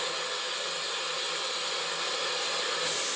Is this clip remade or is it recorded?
recorded